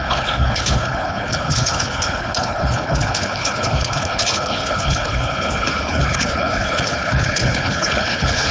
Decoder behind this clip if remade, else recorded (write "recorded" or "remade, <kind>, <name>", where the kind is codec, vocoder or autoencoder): remade, codec, HILCodec